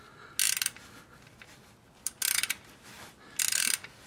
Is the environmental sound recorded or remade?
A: recorded